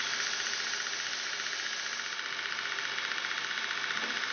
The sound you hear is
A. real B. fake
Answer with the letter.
A